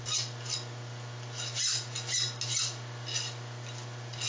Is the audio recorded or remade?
recorded